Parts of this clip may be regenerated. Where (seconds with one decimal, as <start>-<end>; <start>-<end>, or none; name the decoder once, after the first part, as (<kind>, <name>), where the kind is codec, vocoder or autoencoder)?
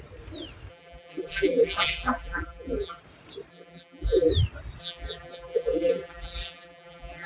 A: 0.7-3.0 (vocoder, BigVGAN v2); 3.5-4.3; 4.8-7.3